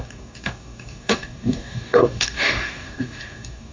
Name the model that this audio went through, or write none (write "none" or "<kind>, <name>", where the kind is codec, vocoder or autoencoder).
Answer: codec, DAC